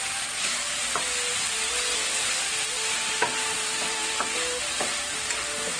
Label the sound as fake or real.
real